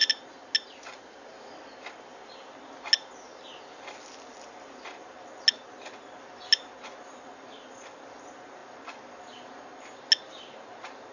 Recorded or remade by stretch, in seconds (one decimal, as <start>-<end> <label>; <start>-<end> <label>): 0.0-11.1 recorded